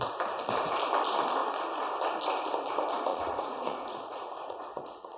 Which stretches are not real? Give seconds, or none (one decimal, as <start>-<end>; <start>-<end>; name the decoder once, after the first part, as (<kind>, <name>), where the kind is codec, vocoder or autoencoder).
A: 3.1-5.2 (vocoder, Vocos)